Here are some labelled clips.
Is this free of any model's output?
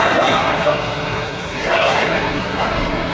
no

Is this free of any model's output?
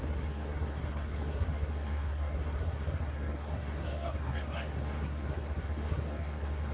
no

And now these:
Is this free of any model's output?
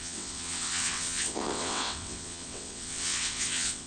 no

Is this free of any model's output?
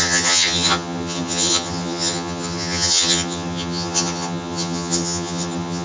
no